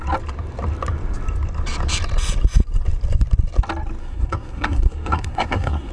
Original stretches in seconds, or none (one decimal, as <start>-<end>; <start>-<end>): 0.0-4.0